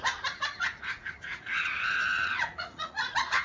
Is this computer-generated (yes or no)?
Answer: yes